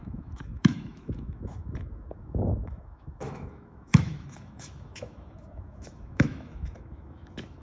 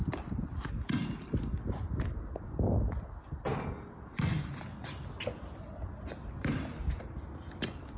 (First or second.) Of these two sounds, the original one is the second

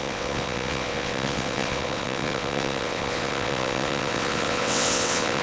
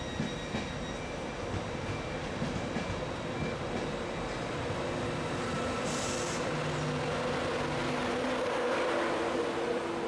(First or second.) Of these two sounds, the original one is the second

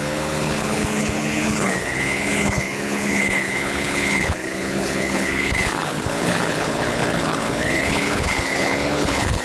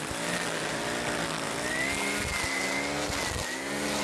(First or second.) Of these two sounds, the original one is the second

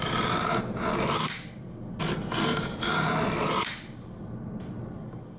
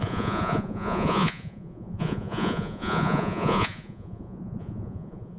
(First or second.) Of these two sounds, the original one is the first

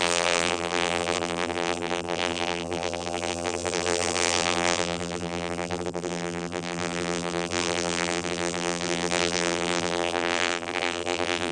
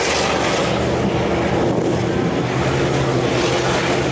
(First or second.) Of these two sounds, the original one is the second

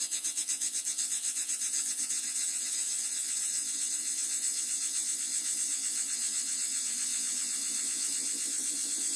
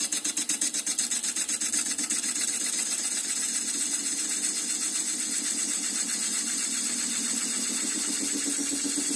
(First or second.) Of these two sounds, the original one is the second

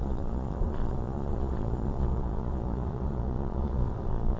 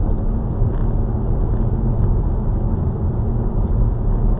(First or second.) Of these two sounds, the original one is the second